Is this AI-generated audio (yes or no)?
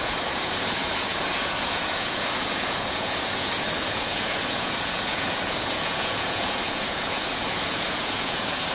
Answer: yes